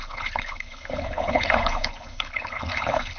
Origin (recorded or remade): remade